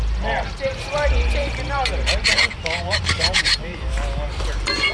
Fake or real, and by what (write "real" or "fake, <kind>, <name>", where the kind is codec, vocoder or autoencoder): fake, vocoder, BigVGAN v2